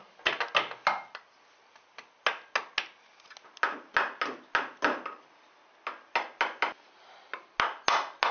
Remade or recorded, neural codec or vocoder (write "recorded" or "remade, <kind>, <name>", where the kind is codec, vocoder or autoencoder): recorded